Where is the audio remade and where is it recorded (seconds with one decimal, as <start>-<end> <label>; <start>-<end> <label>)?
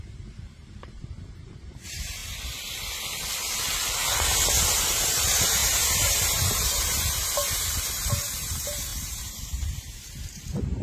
0.0-2.2 remade; 2.2-4.7 recorded; 4.7-10.8 remade